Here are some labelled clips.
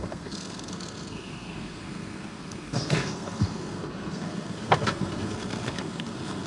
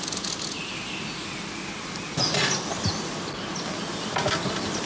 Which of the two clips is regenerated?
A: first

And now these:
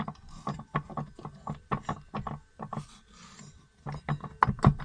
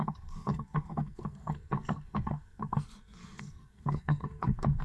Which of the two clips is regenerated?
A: second